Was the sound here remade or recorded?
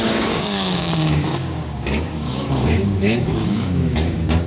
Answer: remade